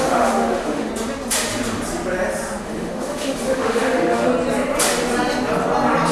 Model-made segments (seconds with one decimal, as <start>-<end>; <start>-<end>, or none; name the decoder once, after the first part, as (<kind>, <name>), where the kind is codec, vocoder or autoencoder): 0.0-0.9 (autoencoder, DAC-VAE); 2.6-4.3